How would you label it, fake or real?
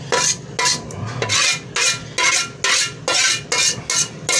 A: real